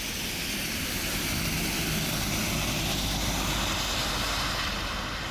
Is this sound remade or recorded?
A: recorded